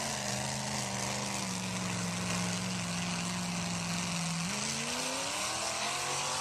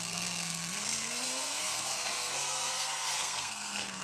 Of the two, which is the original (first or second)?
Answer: first